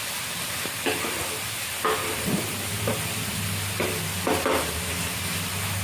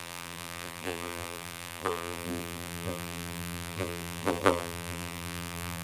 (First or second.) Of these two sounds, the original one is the first